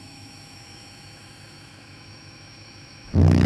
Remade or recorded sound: remade